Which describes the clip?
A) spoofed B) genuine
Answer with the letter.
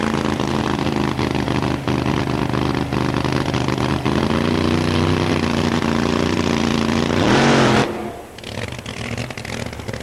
A